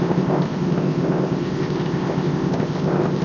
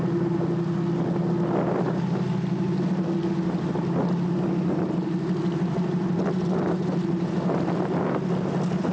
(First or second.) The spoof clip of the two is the first